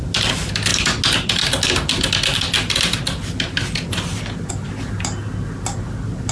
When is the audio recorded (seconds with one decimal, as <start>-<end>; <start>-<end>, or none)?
0.0-6.3

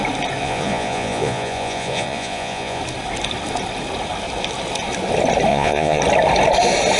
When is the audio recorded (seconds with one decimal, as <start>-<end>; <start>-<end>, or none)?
0.0-0.4; 2.8-5.5; 6.0-7.0

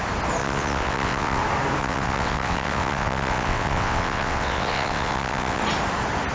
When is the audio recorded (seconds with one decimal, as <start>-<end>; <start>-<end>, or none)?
0.0-0.4; 1.4-1.8; 5.6-6.3

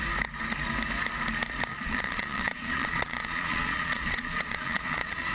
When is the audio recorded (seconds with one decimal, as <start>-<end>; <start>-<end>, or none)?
0.0-1.7

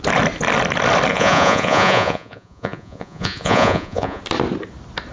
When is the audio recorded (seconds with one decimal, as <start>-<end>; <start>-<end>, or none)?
0.0-1.1; 4.2-5.1

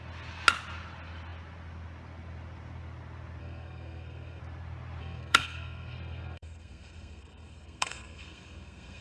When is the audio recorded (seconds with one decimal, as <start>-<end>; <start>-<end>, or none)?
0.0-3.4; 4.4-5.0